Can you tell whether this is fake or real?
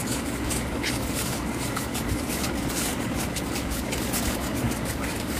fake